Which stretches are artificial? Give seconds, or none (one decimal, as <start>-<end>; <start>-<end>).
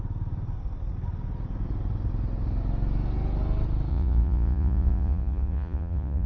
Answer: 3.9-6.3